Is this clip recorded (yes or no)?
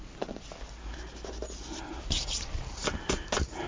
yes